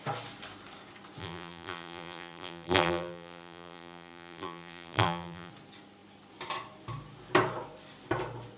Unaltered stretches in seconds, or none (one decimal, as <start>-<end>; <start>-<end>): 0.0-1.2; 5.5-8.6